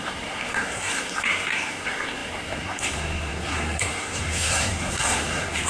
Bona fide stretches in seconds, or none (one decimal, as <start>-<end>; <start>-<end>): none